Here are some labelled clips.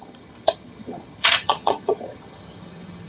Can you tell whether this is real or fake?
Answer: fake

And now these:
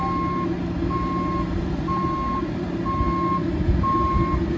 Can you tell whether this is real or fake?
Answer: real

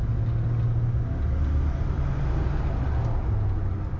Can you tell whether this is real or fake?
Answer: real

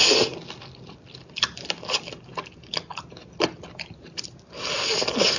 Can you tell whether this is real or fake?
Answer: real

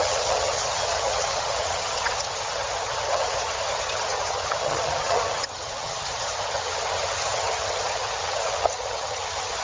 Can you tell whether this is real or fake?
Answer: fake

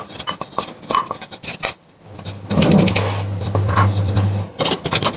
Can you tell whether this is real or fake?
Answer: real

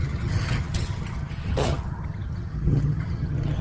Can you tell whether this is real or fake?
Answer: fake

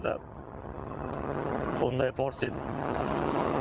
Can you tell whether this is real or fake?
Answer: fake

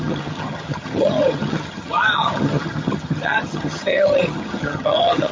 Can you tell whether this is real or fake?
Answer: fake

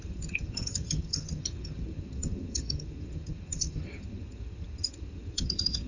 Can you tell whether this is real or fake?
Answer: fake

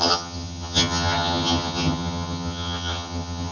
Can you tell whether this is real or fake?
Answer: fake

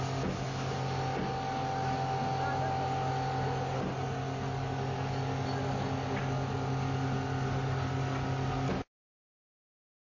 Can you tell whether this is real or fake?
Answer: real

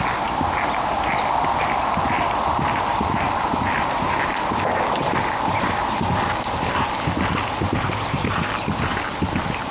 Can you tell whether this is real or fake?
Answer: real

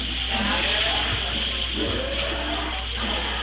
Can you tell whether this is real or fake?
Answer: real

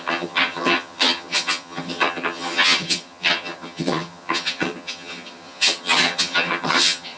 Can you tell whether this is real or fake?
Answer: fake